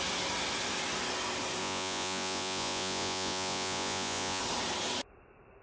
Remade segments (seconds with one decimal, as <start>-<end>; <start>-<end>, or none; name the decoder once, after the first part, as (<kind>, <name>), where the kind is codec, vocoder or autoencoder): 1.6-4.4 (vocoder, Vocos)